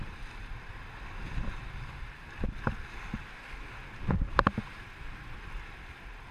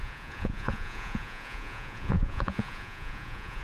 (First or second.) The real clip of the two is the first